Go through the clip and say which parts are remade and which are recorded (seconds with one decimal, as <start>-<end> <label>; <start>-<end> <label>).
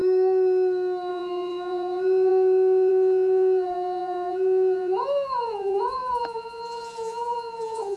0.0-1.1 recorded; 1.1-8.0 remade